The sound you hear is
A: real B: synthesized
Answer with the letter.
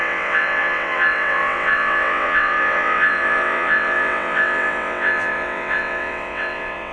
B